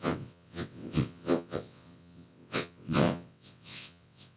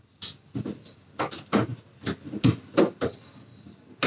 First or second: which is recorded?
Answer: second